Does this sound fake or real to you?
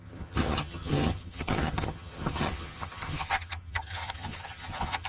fake